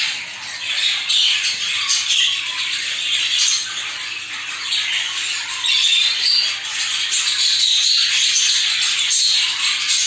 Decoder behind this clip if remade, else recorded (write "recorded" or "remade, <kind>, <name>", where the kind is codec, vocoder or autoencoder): recorded